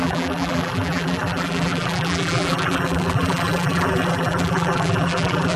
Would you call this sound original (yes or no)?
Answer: no